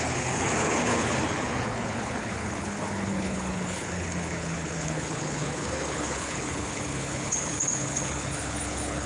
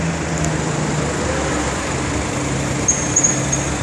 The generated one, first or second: first